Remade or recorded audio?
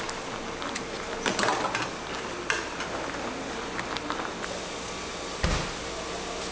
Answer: recorded